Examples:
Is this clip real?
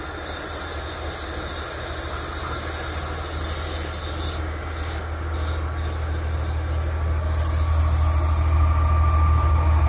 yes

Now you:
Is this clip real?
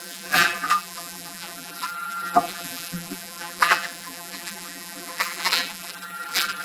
no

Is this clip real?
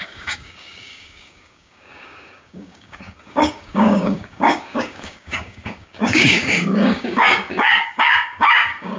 no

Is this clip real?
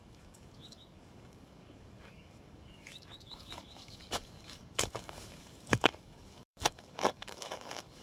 no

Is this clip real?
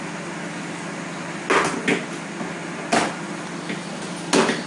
yes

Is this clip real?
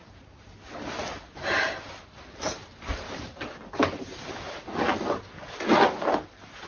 yes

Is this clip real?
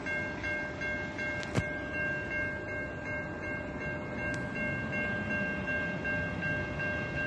yes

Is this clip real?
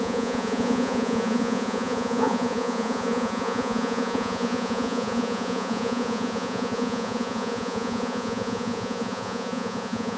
no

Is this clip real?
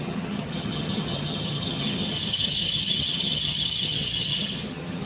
no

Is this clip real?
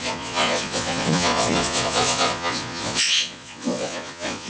no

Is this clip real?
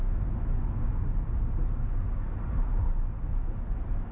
yes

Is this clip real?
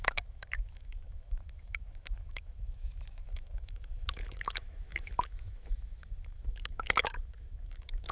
no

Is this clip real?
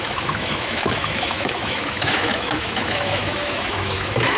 no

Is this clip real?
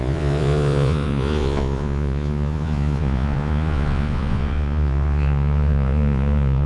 no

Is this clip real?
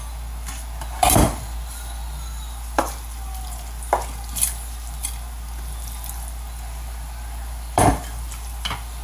no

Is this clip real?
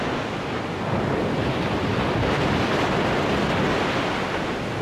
yes